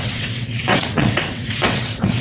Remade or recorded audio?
remade